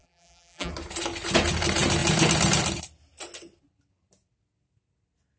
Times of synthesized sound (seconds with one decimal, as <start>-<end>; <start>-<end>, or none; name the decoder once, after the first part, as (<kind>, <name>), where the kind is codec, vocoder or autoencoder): 0.0-0.7 (vocoder, BigVGAN v2)